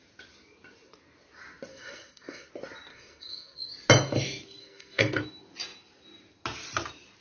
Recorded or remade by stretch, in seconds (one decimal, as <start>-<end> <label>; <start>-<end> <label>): 0.0-1.7 recorded; 1.7-2.5 remade; 2.5-2.9 recorded; 2.9-3.7 remade; 3.7-4.6 recorded; 4.6-5.2 remade; 5.2-7.2 recorded